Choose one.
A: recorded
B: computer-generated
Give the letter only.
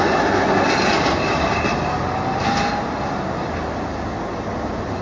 A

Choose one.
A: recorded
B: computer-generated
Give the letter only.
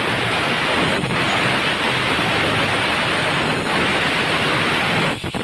A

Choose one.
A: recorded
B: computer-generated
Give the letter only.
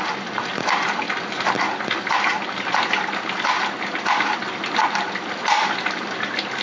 A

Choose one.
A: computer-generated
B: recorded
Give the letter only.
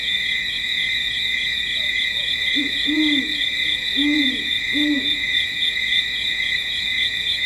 A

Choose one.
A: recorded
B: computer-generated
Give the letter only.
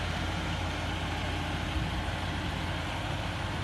A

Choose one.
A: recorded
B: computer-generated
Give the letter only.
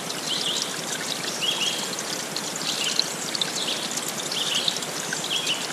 A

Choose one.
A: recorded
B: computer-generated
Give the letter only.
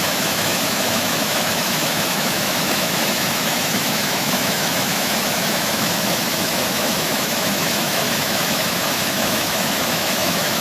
B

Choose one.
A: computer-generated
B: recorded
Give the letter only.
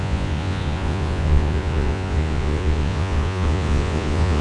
A